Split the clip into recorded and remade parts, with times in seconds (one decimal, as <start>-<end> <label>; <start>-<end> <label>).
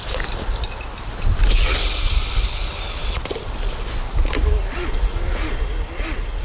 0.0-6.4 recorded